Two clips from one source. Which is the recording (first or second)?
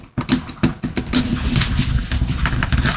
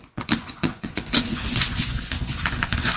first